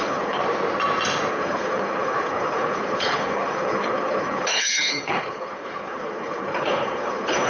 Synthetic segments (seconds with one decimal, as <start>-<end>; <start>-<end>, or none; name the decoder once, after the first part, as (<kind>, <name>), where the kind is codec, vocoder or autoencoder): 0.0-0.4 (codec, HILCodec); 1.3-7.5